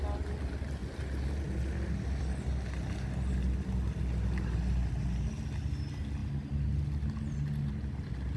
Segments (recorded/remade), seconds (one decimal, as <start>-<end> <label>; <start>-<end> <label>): 0.0-8.4 recorded